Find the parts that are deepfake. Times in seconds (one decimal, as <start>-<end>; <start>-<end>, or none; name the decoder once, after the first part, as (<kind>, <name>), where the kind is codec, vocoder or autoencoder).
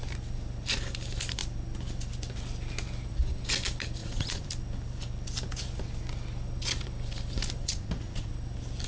4.0-4.5 (vocoder, Vocos); 7.6-8.3